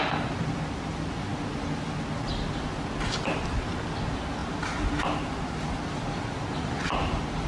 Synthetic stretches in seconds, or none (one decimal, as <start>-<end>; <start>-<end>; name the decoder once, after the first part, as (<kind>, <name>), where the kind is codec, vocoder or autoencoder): 4.4-5.9 (vocoder, BigVGAN v2)